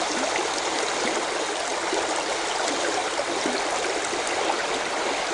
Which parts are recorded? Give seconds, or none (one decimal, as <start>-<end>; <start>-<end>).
0.0-5.3

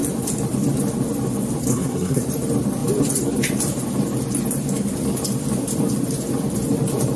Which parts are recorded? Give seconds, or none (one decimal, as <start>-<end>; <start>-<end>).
0.0-1.7; 2.2-7.2

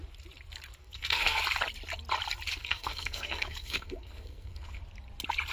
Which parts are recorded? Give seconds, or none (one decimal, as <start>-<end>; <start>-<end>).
0.0-0.8; 1.4-2.6; 4.8-5.5

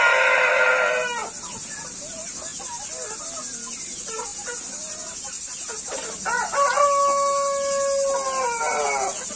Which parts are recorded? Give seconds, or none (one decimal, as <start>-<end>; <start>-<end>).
0.0-9.4

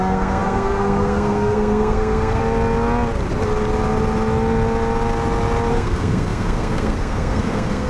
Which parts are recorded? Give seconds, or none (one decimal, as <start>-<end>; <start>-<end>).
2.4-5.7